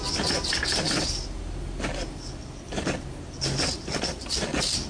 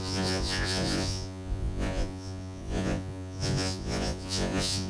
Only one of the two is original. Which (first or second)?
first